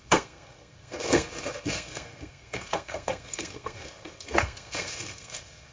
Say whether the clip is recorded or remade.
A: remade